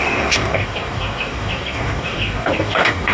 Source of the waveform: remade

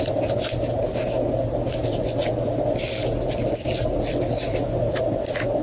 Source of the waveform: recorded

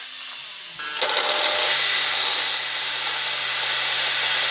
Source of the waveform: recorded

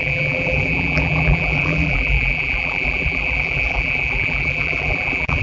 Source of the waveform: remade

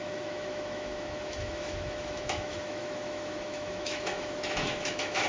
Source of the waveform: remade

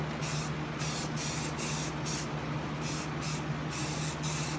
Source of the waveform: recorded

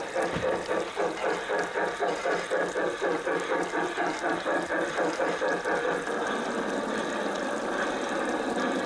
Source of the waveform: recorded